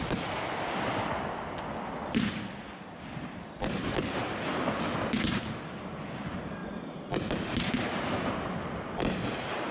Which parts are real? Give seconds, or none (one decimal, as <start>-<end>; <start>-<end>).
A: 0.0-9.7

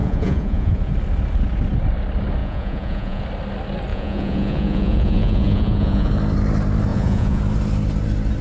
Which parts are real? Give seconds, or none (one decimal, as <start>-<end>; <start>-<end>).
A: 0.9-2.4; 3.2-3.9; 6.1-6.9; 7.4-8.4

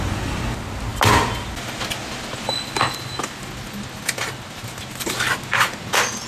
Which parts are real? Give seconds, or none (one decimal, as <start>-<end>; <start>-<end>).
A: 0.0-6.3

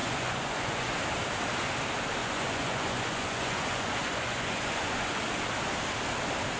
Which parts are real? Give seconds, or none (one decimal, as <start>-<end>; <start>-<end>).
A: 0.9-2.2; 5.2-6.6

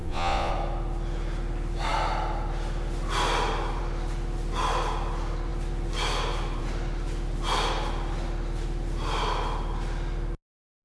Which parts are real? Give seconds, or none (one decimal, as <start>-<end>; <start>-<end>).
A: 0.5-10.8